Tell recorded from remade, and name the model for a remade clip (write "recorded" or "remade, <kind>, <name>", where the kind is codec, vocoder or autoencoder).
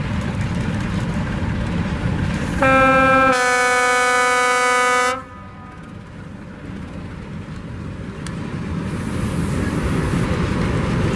recorded